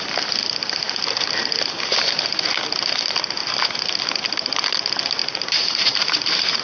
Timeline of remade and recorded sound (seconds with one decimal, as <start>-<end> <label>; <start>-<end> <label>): 0.0-0.4 recorded; 0.4-1.0 remade; 1.0-3.4 recorded; 3.4-4.2 remade; 4.2-5.2 recorded; 5.2-6.6 remade